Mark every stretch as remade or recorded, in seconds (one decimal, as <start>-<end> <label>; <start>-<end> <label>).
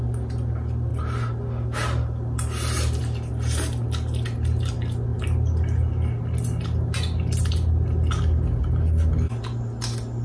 0.0-10.2 recorded